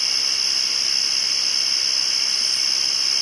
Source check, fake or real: real